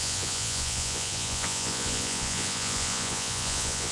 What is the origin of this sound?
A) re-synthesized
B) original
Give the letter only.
A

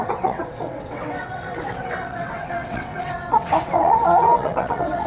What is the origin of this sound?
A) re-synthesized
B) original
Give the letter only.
A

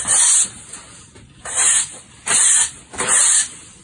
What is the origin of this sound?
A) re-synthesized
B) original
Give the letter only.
B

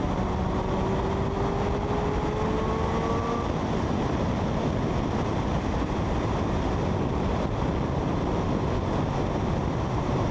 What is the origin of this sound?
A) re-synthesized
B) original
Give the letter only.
B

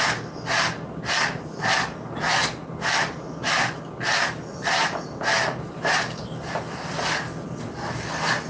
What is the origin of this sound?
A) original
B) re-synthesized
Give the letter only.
A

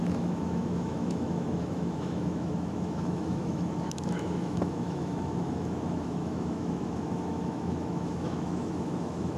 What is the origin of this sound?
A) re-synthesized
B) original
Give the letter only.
A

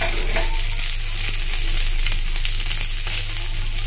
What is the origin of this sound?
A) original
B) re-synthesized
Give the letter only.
A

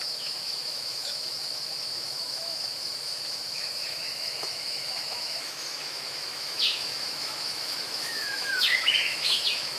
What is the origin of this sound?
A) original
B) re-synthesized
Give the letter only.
B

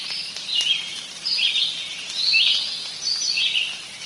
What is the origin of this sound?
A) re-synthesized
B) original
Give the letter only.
A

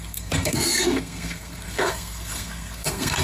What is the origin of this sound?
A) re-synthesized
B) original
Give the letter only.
A